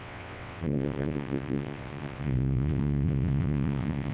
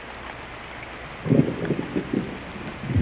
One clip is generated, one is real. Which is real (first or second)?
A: second